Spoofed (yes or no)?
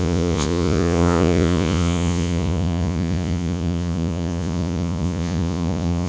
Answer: yes